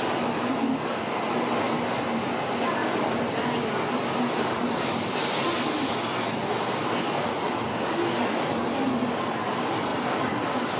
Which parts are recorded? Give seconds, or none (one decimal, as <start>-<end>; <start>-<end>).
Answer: 0.0-10.8